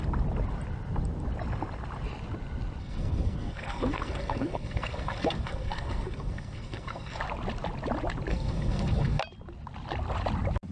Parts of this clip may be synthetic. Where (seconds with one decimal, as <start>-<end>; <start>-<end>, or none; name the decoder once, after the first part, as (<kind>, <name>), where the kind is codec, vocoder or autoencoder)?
2.8-7.2 (codec, SNAC); 8.3-9.2